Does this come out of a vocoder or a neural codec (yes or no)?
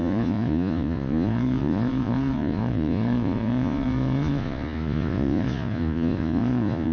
yes